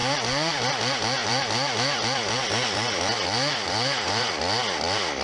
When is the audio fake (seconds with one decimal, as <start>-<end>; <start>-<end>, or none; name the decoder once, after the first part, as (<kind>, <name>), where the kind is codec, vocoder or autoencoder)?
0.0-0.7 (vocoder, BigVGAN v2); 1.2-4.3